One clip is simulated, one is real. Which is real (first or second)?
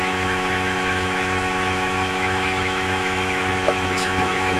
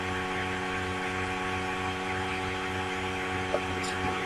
second